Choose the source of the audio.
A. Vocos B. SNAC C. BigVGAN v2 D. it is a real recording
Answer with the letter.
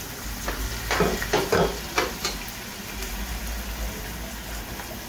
D